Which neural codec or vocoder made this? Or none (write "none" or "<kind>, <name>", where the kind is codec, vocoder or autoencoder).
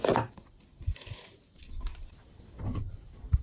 none